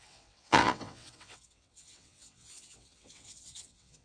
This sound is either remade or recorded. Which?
remade